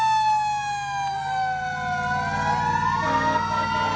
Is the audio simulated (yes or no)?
no